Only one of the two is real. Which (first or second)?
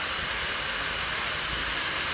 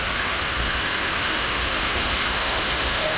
first